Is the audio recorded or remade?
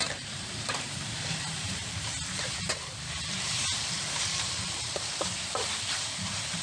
remade